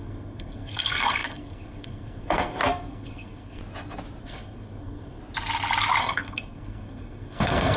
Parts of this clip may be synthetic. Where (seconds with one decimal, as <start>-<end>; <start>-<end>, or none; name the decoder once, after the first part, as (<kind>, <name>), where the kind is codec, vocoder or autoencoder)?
0.0-3.6 (codec, SNAC); 4.2-5.2; 6.0-7.8